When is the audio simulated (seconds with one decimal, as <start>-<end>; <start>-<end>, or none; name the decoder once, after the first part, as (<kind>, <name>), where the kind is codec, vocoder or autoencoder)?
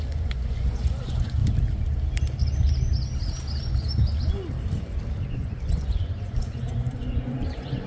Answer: 0.0-1.4 (vocoder, Vocos); 5.3-7.9